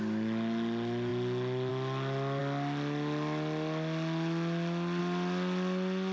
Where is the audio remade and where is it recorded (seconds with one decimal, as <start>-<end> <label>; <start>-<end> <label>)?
0.0-6.1 recorded

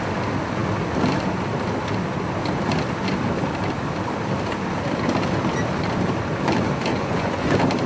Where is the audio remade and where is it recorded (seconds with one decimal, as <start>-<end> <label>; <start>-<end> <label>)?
0.0-6.9 recorded; 6.9-7.5 remade; 7.5-7.9 recorded